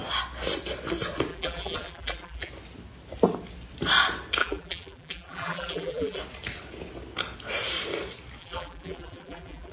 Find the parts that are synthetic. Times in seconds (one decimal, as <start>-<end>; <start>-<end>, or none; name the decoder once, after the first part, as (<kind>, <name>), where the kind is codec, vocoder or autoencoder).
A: 1.3-2.5 (vocoder, BigVGAN v2); 4.4-6.2; 8.4-9.7